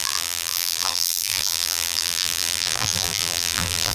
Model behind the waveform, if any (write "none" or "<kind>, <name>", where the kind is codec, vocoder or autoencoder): vocoder, BigVGAN v2